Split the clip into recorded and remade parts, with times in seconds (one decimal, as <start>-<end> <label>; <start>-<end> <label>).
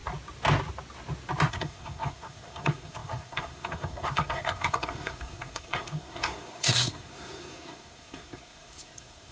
0.0-1.5 recorded; 1.5-9.3 remade